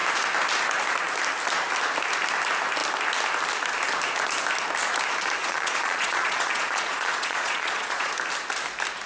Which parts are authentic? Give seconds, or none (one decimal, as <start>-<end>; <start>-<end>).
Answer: 0.0-5.4; 8.1-9.1